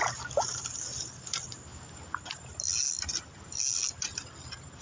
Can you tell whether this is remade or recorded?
recorded